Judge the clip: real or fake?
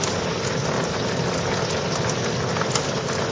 real